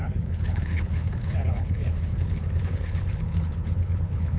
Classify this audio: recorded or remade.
remade